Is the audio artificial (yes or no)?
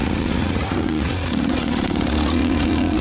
yes